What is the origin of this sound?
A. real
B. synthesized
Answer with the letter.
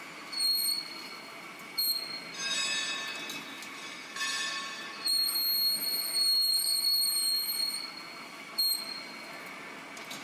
A